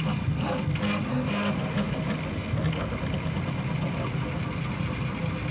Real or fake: real